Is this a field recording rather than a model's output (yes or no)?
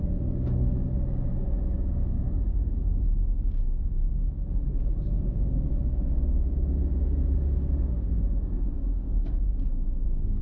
no